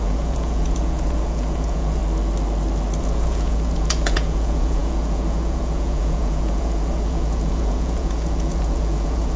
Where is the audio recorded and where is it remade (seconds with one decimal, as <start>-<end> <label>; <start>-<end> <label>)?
0.0-2.0 remade; 2.0-3.0 recorded; 3.0-9.4 remade